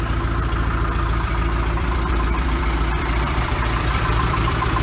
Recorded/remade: remade